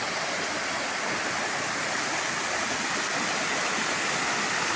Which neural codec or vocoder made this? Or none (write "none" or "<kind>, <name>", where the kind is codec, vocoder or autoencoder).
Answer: none